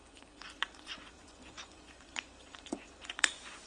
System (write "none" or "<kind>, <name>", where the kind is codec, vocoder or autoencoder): vocoder, Vocos